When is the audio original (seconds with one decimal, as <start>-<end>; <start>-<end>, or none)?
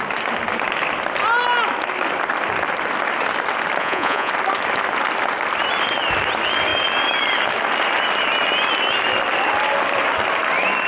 0.0-3.8; 4.3-10.9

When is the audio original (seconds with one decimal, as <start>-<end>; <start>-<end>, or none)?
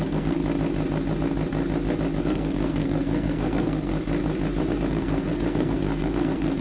0.4-2.2; 3.9-4.9